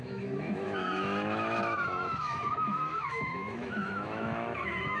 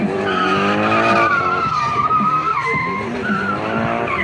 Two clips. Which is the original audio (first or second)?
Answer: second